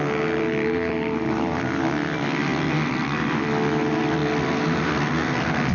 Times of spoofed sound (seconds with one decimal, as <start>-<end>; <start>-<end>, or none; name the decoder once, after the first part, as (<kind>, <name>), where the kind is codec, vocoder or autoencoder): 2.5-3.4 (vocoder, BigVGAN v2)